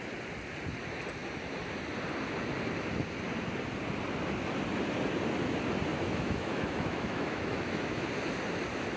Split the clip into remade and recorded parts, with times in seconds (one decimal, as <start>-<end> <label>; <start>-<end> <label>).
0.0-5.9 recorded; 5.9-8.1 remade; 8.1-9.0 recorded